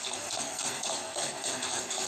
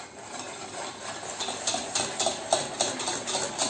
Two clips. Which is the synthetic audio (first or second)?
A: first